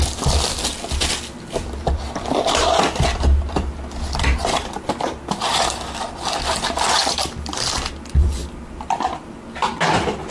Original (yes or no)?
yes